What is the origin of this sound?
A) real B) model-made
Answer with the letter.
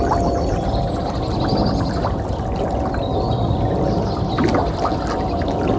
A